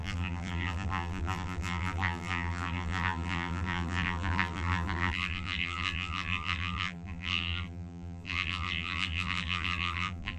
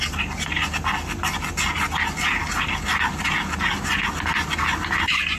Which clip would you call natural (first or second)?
second